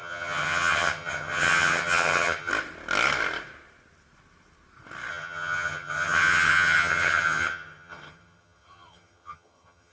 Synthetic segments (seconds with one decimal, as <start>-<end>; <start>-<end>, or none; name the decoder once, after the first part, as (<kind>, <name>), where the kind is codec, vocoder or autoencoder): 0.0-2.5 (vocoder, HiFi-GAN); 5.1-9.9